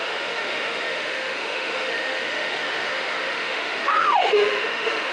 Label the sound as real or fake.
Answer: fake